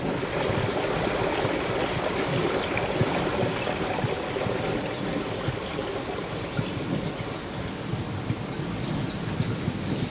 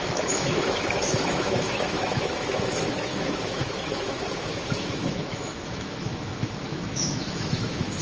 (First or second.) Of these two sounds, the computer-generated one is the second